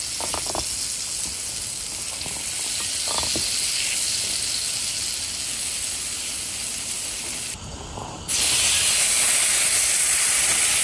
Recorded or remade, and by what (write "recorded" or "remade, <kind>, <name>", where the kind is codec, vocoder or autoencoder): recorded